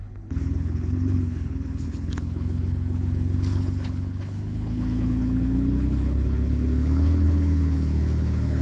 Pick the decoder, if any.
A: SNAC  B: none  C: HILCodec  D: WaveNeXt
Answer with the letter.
C